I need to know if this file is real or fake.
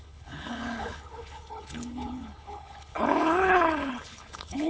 fake